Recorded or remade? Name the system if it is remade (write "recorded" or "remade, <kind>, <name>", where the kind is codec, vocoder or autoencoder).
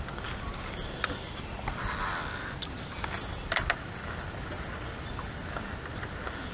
recorded